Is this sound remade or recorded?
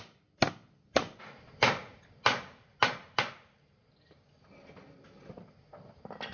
recorded